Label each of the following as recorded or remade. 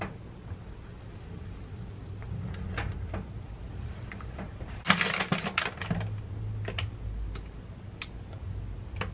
recorded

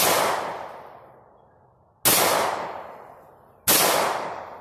recorded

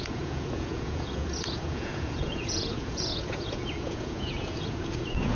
remade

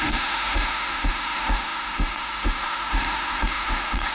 remade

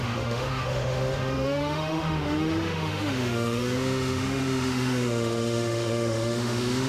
remade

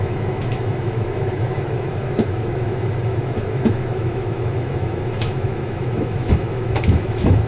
remade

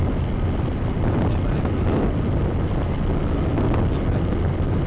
recorded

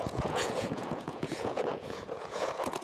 remade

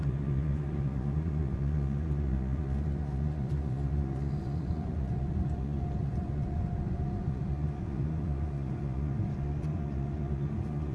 remade